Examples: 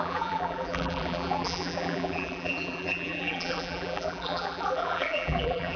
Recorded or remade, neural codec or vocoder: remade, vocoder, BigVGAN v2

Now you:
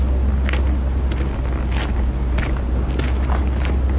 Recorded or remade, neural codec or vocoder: recorded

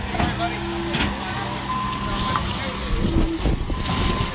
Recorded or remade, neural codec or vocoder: recorded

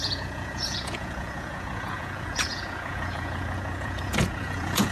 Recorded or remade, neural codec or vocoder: remade, vocoder, Vocos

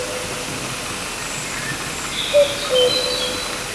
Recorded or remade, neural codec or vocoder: recorded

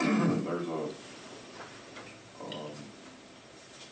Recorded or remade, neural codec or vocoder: recorded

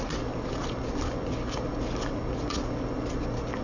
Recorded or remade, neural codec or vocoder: recorded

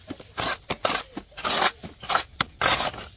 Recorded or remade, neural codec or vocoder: recorded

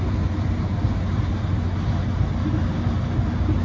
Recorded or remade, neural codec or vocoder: recorded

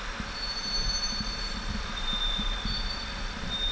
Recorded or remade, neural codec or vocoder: recorded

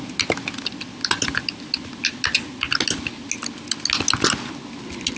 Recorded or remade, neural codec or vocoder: recorded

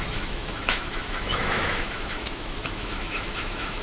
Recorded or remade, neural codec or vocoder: remade, autoencoder, DAC-VAE